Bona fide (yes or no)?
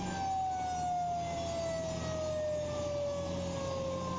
yes